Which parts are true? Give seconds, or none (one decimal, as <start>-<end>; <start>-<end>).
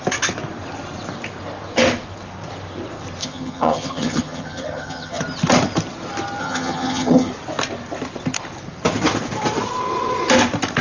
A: 0.0-3.2; 5.2-6.4; 7.3-10.8